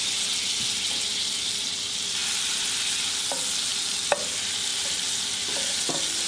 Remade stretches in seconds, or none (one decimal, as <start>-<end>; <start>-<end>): 3.7-4.2; 4.7-5.3